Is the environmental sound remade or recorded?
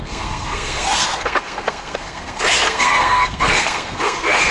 remade